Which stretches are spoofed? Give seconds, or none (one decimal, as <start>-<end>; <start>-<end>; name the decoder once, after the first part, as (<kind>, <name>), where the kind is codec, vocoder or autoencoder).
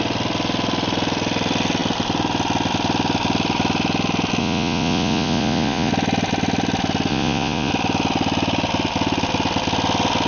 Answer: 4.4-5.9 (vocoder, Vocos); 7.1-7.7